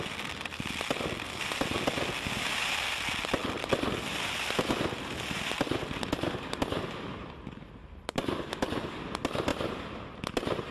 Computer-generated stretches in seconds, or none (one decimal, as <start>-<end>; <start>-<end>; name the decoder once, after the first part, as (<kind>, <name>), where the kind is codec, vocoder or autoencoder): none